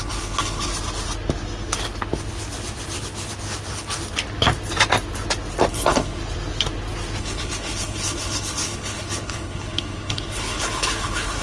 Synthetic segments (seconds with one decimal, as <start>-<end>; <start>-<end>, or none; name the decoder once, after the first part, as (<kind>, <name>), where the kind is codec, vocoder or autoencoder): 0.0-0.7 (codec, HILCodec); 5.7-6.2; 7.2-11.4